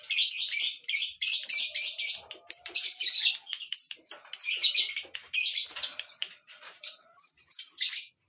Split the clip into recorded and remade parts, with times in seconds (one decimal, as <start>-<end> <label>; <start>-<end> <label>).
0.0-1.0 recorded; 1.0-4.1 remade; 4.1-5.6 recorded; 5.6-8.3 remade